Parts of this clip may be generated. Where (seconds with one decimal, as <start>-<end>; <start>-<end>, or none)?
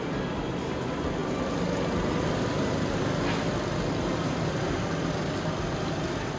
none